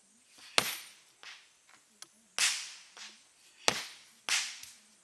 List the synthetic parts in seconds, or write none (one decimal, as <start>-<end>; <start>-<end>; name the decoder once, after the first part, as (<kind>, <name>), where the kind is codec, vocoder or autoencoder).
none